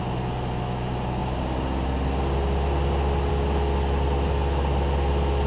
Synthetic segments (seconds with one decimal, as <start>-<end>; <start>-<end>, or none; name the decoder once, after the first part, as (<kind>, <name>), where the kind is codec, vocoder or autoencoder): none